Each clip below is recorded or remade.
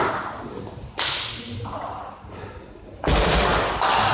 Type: recorded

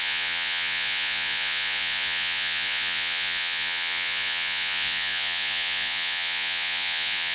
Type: remade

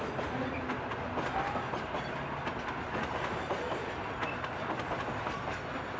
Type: recorded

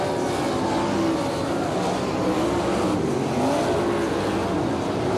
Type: recorded